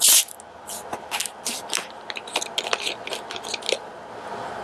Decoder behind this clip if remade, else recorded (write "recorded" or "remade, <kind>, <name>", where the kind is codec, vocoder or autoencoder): recorded